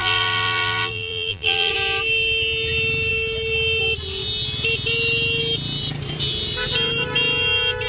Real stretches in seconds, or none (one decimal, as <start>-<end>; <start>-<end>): 1.7-7.9